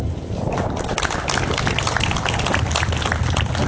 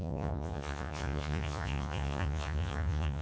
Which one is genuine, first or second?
first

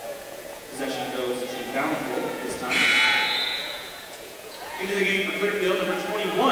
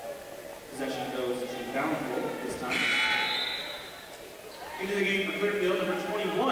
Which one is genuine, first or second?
second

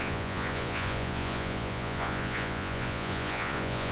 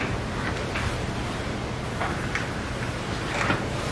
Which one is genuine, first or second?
second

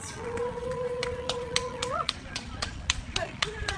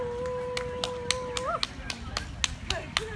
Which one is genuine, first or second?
second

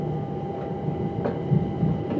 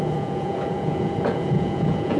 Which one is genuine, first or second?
first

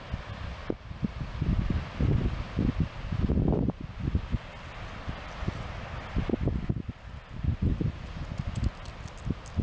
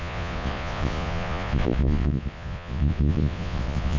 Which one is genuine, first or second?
first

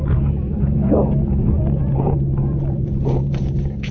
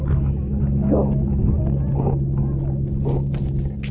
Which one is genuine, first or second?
second